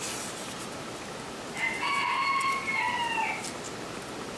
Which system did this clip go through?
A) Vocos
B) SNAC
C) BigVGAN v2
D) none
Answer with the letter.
D